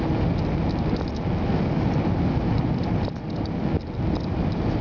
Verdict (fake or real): real